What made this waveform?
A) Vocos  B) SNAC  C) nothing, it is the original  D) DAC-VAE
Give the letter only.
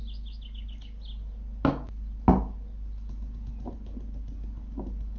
C